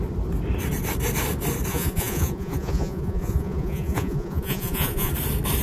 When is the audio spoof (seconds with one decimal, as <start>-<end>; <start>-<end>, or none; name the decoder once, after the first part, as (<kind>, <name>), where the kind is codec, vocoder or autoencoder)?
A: 1.7-5.1 (vocoder, Vocos)